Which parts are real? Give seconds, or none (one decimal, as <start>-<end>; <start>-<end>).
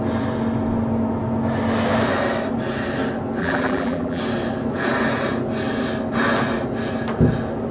0.0-3.4; 4.2-7.7